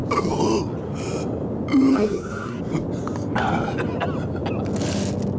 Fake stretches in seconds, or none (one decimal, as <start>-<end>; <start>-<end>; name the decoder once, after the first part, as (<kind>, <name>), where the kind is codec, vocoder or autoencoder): 1.9-2.6 (codec, SNAC)